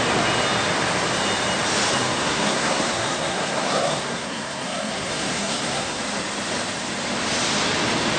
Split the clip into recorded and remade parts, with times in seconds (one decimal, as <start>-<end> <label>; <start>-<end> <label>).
0.0-2.2 recorded; 2.2-6.0 remade; 6.0-8.2 recorded